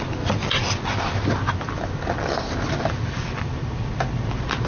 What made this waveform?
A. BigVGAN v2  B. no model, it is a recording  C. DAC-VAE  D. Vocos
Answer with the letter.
B